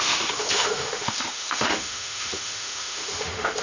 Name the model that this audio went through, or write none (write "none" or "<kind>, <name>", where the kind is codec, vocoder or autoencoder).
autoencoder, DAC-VAE